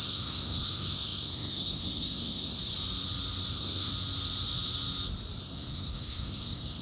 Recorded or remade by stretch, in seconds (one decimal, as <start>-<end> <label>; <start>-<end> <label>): 0.0-2.6 remade; 2.6-3.5 recorded; 3.5-3.9 remade; 3.9-5.4 recorded; 5.4-6.8 remade

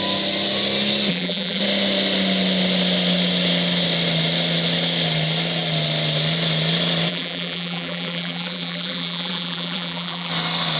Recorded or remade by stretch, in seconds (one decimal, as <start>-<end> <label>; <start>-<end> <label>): 0.0-1.1 recorded; 1.1-1.6 remade; 1.6-7.1 recorded; 7.1-10.3 remade; 10.3-10.8 recorded

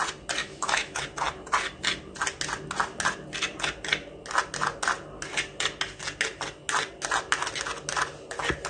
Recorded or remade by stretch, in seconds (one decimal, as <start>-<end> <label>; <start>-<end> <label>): 0.0-0.4 recorded; 0.4-1.0 remade; 1.0-8.7 recorded

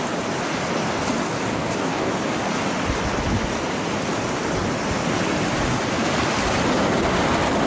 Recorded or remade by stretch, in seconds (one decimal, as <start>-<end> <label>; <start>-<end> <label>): 0.0-1.5 recorded; 1.5-2.1 remade; 2.1-7.7 recorded

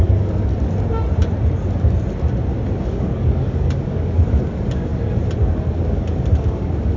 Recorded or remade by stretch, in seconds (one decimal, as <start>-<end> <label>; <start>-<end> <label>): 0.0-0.5 remade; 0.5-2.8 recorded; 2.8-4.9 remade; 4.9-5.7 recorded; 5.7-7.0 remade

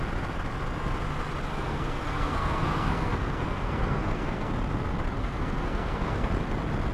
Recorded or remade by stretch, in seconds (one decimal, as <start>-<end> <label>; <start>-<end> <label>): 0.0-1.5 recorded; 1.5-4.5 remade; 4.5-5.2 recorded; 5.2-6.3 remade; 6.3-6.9 recorded